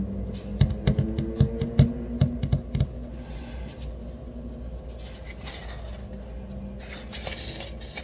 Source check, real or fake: real